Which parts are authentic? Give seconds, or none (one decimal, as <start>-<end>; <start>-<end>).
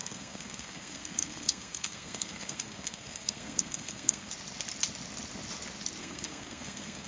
4.3-6.0